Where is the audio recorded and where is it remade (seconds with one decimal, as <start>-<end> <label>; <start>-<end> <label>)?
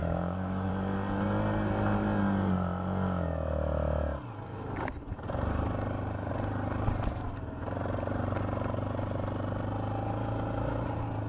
0.0-0.7 remade; 0.7-11.3 recorded